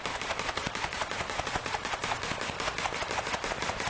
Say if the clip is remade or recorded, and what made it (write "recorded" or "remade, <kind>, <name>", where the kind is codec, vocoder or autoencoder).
remade, vocoder, BigVGAN v2